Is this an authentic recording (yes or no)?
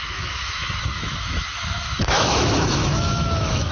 no